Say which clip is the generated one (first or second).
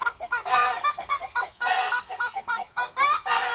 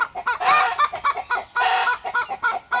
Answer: first